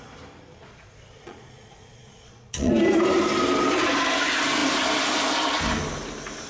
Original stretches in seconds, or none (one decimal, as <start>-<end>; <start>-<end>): 0.0-0.5; 2.7-6.5